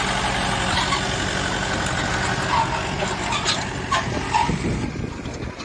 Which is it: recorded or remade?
recorded